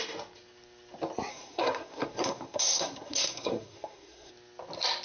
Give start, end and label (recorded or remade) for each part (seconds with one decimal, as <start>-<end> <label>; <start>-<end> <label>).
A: 0.0-1.3 recorded; 1.3-4.3 remade; 4.3-5.0 recorded